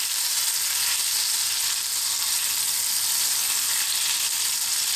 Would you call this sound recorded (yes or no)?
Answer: yes